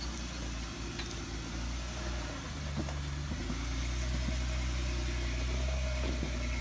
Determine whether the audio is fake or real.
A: real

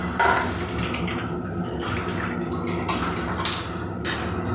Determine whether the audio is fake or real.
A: real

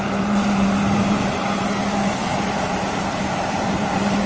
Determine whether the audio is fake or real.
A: fake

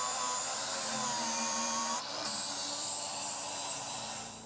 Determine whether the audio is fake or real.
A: fake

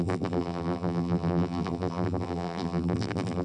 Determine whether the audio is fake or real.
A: fake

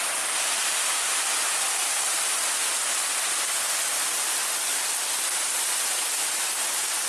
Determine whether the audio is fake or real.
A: real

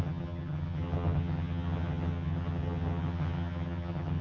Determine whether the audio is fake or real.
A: fake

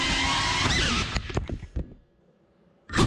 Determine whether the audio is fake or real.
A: real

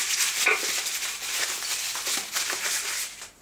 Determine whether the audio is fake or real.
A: real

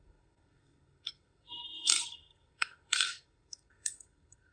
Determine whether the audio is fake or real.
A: fake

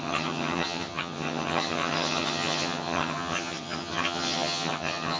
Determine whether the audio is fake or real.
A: fake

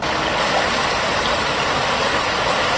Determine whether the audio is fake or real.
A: real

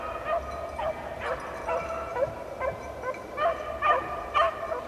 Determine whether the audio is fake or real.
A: real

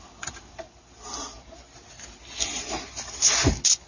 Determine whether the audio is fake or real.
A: real